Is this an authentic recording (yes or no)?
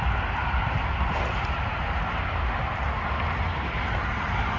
yes